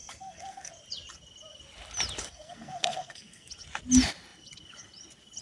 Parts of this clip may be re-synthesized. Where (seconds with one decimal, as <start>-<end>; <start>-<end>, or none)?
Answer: 0.0-0.7; 2.2-3.5